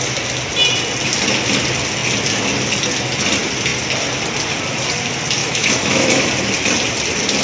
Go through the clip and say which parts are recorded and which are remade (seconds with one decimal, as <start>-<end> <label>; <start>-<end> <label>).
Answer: 0.0-5.4 recorded; 5.4-6.3 remade; 6.3-7.4 recorded